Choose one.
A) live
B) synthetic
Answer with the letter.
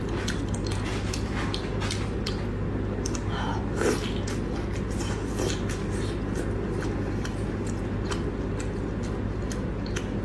A